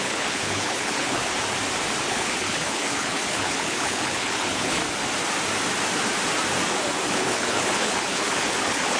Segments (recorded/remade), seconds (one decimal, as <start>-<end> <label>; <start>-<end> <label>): 0.0-1.2 remade; 1.2-2.1 recorded; 2.1-4.8 remade; 4.8-7.1 recorded; 7.1-9.0 remade